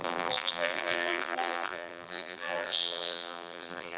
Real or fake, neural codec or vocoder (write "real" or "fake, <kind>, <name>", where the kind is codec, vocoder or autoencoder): fake, vocoder, BigVGAN v2